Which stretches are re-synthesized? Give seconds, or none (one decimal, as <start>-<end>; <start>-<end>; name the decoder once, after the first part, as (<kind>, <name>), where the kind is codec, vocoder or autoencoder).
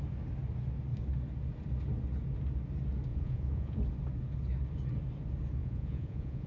3.1-3.8 (vocoder, Vocos); 5.6-6.5